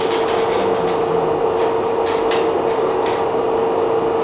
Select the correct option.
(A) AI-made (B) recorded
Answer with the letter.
B